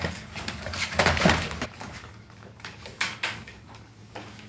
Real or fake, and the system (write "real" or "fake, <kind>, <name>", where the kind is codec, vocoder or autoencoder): fake, codec, DAC